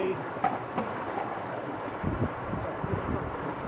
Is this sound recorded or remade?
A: remade